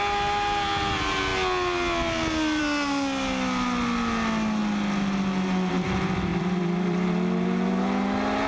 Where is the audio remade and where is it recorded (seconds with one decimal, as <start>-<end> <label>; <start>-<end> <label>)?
0.0-6.3 recorded; 6.3-7.8 remade; 7.8-8.5 recorded